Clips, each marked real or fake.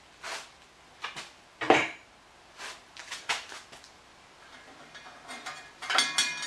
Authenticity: real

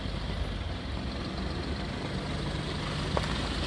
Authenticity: real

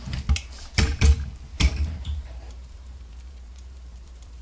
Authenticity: fake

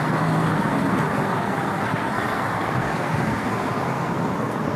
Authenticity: fake